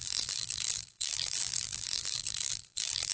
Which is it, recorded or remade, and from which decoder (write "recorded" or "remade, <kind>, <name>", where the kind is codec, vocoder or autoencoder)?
remade, vocoder, BigVGAN v2